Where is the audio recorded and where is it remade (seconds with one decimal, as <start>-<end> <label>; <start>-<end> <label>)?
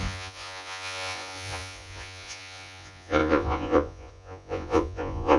0.0-5.4 remade